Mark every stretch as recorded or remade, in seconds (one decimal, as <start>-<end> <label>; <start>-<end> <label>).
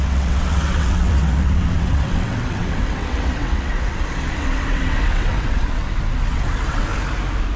0.0-6.9 remade; 6.9-7.6 recorded